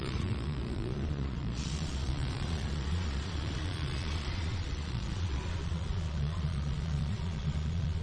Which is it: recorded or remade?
remade